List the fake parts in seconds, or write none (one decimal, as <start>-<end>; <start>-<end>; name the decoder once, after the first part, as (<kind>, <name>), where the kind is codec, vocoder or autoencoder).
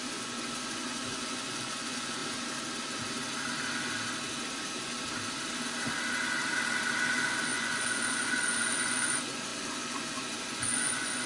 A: 0.0-2.2 (vocoder, Vocos); 7.1-11.3